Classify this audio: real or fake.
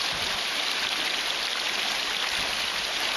real